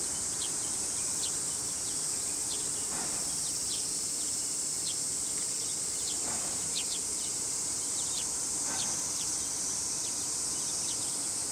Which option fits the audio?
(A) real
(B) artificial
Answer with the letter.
B